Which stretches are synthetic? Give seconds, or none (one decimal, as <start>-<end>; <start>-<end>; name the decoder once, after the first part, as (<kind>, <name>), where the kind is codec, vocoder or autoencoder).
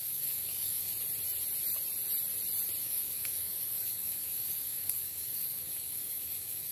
0.0-0.9 (codec, DAC); 2.8-6.7